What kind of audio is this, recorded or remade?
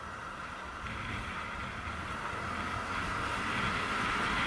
recorded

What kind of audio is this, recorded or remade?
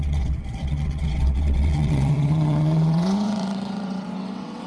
remade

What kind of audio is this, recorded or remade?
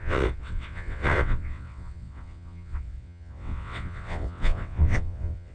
remade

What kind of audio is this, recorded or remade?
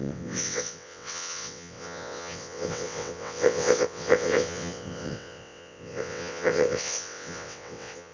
remade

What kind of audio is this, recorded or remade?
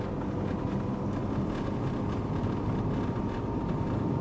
recorded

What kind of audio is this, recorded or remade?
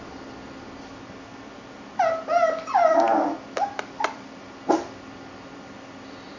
recorded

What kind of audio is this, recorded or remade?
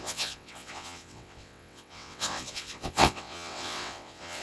remade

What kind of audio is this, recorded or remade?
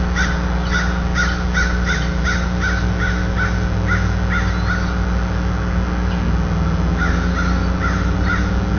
recorded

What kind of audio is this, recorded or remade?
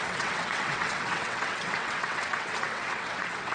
remade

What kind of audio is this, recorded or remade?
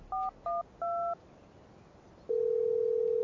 recorded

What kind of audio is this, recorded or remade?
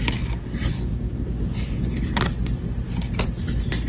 recorded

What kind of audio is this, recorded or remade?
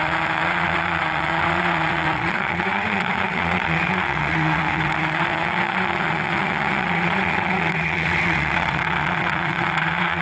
remade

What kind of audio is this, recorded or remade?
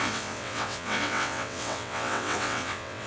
remade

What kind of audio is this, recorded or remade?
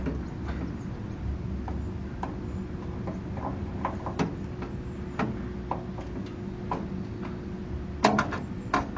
recorded